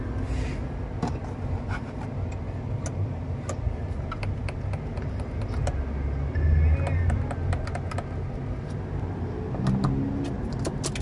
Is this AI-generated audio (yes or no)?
no